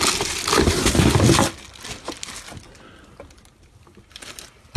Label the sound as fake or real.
real